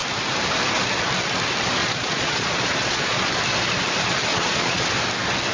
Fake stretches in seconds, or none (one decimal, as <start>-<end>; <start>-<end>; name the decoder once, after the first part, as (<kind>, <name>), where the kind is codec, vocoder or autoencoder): 1.8-3.3 (vocoder, Vocos); 4.3-4.9